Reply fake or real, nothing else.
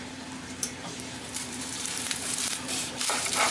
fake